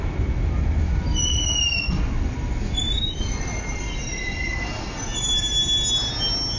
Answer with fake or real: real